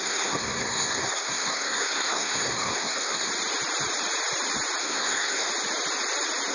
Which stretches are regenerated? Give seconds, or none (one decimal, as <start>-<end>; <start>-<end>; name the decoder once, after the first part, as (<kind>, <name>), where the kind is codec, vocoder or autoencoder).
0.0-3.3 (codec, SNAC); 4.8-5.5